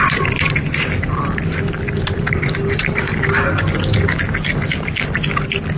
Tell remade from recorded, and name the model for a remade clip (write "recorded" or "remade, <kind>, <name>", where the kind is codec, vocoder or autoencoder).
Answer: recorded